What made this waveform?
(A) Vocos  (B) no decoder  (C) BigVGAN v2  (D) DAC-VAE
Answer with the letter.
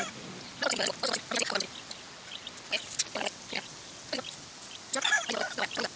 B